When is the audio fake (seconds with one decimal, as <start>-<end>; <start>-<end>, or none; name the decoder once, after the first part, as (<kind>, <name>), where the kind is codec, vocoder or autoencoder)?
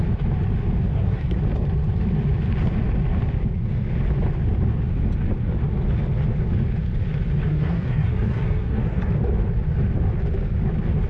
0.9-1.4 (codec, SNAC); 7.5-9.0